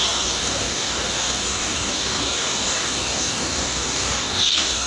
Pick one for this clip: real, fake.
fake